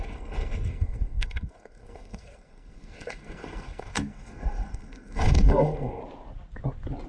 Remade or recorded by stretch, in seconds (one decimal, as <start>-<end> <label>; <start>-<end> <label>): 0.0-6.0 remade; 6.0-7.1 recorded